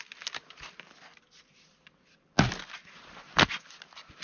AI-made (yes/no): no